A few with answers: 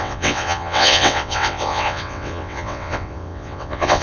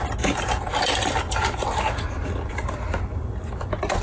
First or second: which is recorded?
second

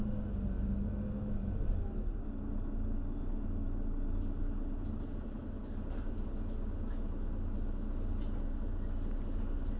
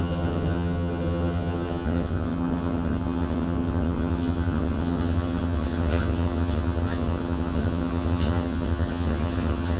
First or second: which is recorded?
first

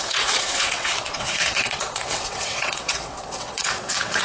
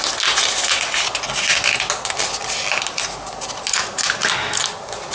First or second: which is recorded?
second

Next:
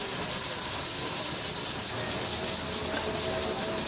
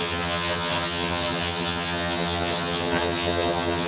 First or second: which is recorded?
first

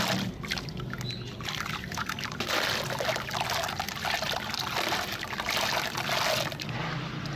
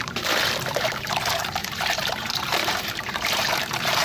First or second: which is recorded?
first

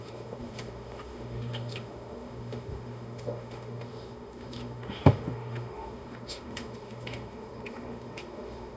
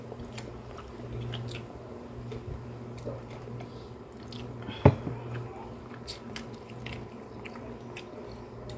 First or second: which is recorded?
second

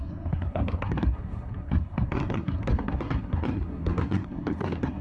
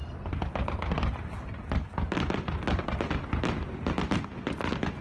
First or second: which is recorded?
second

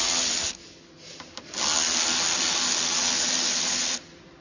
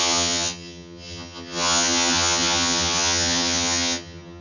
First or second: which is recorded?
first